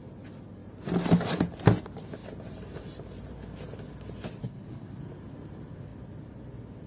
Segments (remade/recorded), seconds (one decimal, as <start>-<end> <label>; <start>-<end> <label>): 0.0-4.4 recorded; 4.4-5.0 remade; 5.0-6.9 recorded